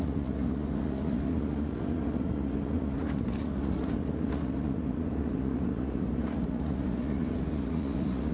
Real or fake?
fake